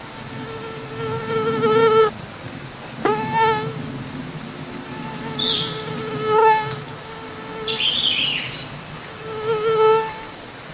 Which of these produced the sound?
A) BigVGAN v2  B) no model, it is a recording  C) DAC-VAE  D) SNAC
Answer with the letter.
B